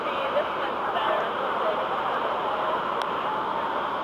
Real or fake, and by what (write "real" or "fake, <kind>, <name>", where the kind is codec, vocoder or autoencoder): fake, vocoder, BigVGAN v2